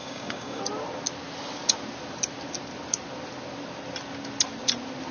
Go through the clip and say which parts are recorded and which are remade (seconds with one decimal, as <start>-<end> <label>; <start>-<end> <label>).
0.0-0.6 remade; 0.6-5.1 recorded